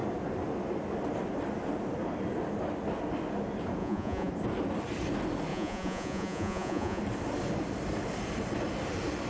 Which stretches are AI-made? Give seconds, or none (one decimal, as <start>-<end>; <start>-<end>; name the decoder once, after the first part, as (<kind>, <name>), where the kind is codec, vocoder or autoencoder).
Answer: 3.8-4.3 (vocoder, Vocos); 5.5-7.0